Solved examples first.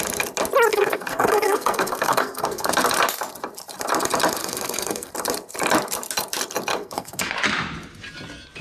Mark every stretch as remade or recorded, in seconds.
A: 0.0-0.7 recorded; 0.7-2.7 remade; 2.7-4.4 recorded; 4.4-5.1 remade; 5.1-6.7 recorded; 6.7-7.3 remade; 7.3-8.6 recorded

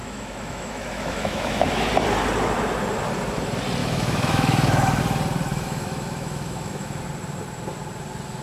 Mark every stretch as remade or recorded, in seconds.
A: 0.0-1.9 remade; 1.9-3.8 recorded; 3.8-5.0 remade; 5.0-5.5 recorded; 5.5-7.0 remade; 7.0-8.4 recorded